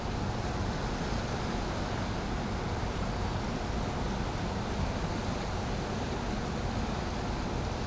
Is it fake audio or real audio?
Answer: real